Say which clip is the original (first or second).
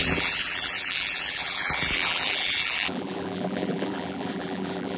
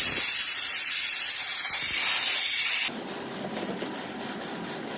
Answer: second